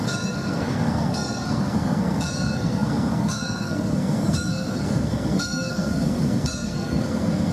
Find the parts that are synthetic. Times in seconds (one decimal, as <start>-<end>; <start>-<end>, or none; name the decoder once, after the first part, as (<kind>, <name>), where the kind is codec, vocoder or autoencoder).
0.0-7.5 (codec, SNAC)